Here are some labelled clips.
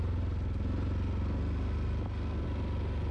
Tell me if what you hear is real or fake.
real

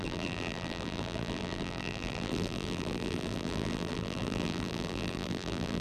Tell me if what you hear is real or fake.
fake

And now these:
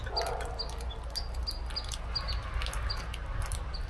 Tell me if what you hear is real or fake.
real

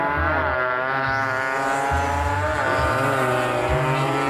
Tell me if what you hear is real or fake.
real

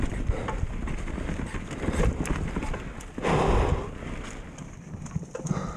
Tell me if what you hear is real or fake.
real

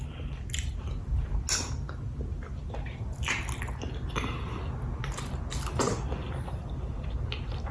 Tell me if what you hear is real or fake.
real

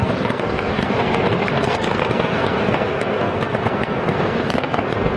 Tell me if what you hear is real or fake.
fake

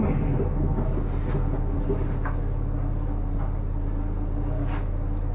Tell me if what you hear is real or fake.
real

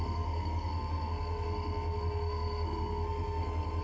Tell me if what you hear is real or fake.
fake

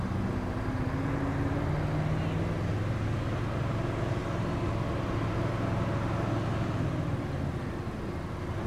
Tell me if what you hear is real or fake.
real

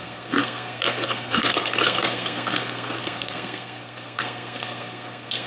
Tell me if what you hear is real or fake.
fake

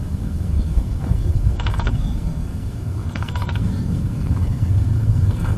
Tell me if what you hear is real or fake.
fake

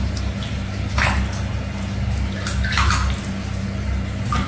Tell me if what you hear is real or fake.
real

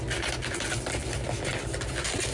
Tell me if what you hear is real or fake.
real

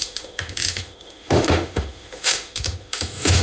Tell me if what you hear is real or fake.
fake